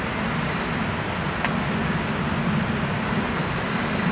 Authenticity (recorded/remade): recorded